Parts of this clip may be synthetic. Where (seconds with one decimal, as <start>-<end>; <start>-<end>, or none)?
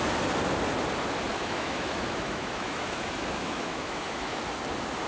1.3-4.4